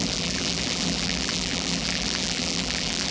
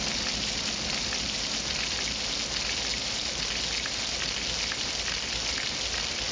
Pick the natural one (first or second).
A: second